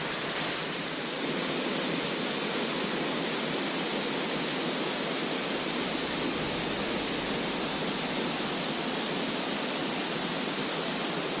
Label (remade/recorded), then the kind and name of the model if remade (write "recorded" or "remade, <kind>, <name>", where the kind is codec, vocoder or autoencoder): recorded